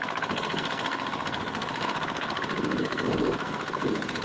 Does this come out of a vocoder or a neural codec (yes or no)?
yes